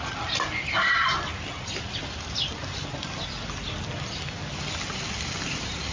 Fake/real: real